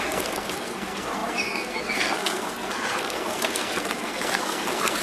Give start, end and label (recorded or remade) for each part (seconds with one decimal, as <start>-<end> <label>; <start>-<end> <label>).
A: 0.0-5.0 remade